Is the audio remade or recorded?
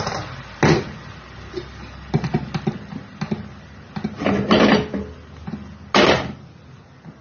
recorded